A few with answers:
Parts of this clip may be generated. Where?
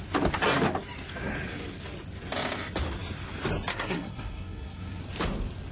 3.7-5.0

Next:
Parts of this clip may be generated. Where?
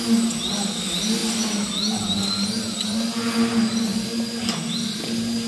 none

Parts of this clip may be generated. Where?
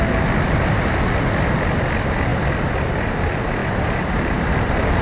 3.6-5.0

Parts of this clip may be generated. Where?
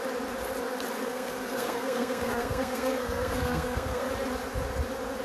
1.0-4.1